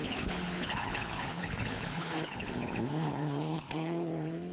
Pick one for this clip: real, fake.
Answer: fake